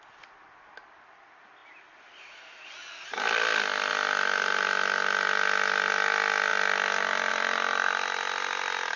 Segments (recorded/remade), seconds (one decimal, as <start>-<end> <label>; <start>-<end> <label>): 0.0-9.0 recorded